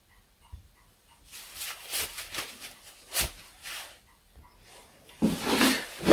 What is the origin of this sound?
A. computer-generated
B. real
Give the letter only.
B